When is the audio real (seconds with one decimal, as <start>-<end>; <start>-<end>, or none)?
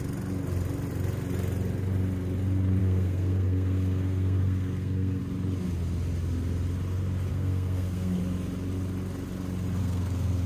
0.0-2.8; 5.2-7.3; 8.2-9.8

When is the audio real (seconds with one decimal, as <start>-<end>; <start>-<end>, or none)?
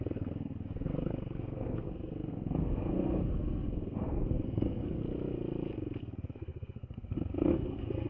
5.0-6.0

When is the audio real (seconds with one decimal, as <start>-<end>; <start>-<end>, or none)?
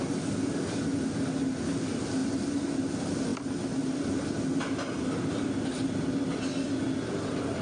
0.0-7.6